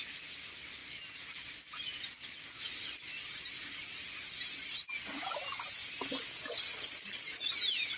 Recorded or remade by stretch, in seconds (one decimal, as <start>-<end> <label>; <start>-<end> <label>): 0.0-8.0 recorded